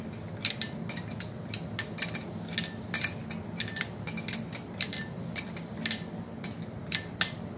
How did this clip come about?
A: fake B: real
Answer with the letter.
B